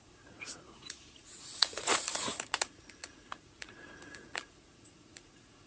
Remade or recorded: remade